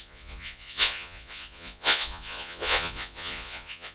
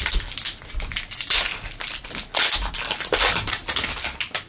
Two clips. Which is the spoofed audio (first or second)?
first